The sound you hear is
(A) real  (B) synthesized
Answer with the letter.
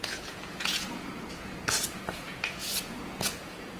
B